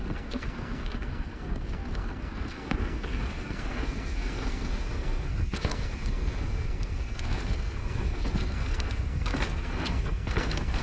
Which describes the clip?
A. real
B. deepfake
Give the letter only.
B